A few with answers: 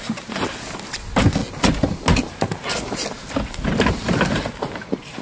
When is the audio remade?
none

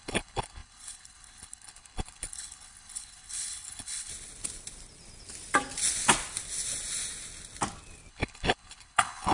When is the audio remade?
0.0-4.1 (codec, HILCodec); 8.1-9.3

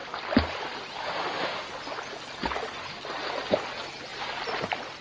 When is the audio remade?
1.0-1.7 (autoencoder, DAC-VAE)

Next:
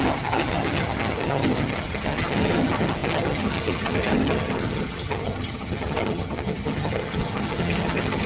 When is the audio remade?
0.0-8.3 (vocoder, HiFi-GAN)

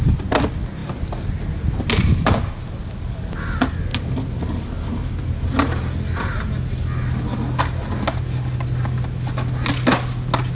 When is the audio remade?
none